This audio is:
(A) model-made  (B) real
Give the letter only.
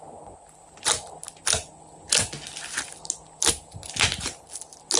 B